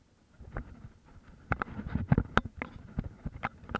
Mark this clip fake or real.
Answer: real